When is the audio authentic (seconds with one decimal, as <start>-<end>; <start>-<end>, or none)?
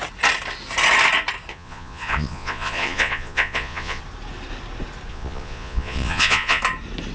0.0-1.5; 4.0-5.1; 6.6-7.1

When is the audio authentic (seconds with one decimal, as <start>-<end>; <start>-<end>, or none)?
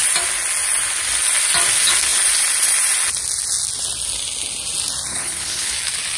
0.0-5.1; 5.7-6.2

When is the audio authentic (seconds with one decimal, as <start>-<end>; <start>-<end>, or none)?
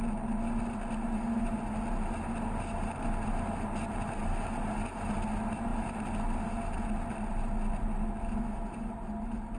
0.0-9.6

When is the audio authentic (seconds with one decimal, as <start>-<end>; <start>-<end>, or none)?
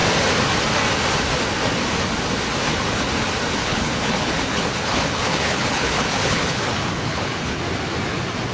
0.0-3.6; 7.6-8.5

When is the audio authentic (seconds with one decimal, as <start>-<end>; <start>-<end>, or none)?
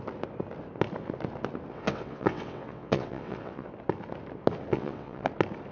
0.0-1.7; 3.7-4.7; 5.3-5.7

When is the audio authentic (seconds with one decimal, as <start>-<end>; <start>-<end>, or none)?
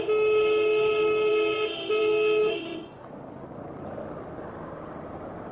0.0-2.4; 3.0-5.5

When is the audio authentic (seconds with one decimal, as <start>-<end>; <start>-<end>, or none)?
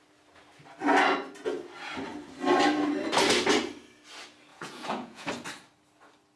0.0-4.5; 5.3-6.4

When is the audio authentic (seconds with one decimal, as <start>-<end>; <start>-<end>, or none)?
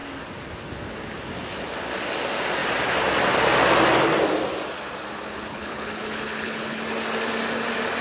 0.0-5.5; 6.8-8.0